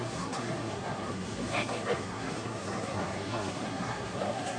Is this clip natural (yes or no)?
no